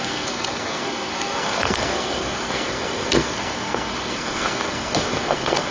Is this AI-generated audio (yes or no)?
yes